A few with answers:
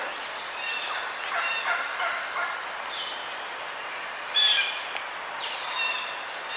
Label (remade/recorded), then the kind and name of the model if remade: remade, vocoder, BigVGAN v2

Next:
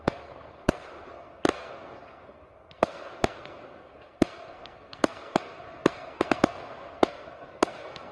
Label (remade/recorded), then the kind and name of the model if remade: remade, codec, SNAC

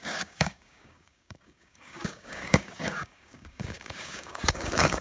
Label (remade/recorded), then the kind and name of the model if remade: remade, codec, DAC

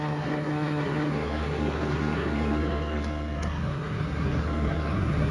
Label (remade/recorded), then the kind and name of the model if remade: remade, codec, SNAC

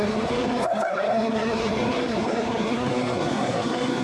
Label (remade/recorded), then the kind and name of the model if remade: remade, codec, SNAC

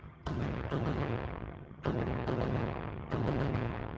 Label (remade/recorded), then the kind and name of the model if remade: remade, vocoder, HiFi-GAN